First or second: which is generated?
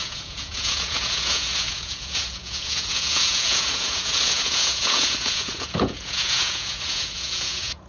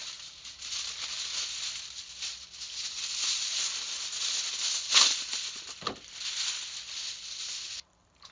first